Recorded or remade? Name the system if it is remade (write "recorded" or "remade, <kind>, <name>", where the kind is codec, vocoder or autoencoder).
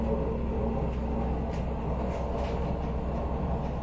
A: recorded